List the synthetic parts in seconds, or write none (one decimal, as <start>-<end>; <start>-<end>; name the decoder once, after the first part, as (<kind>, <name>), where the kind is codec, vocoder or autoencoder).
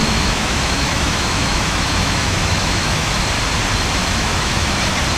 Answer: 0.0-3.1 (autoencoder, DAC-VAE); 4.0-4.8